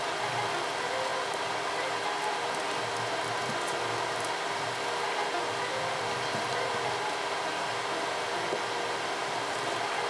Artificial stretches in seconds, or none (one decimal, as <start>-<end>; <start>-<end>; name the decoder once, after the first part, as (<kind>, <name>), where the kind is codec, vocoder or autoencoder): none

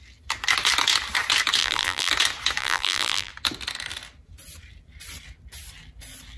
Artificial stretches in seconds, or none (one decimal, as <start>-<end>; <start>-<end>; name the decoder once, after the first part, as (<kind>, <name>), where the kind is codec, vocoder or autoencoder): 1.6-2.1 (vocoder, BigVGAN v2); 2.6-3.3